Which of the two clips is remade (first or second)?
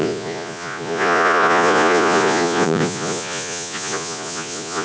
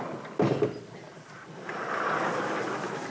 first